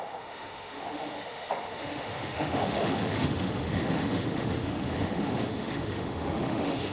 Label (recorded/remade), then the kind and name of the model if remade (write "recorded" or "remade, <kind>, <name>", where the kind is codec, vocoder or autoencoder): remade, autoencoder, DAC-VAE